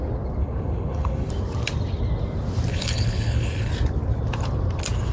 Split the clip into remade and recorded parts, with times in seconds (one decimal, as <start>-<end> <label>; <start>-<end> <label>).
0.0-0.4 recorded; 0.4-1.3 remade; 1.3-2.7 recorded; 2.7-3.7 remade; 3.7-5.1 recorded